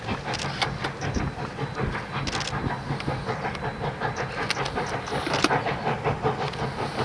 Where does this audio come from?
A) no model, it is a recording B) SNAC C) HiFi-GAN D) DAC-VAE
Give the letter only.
A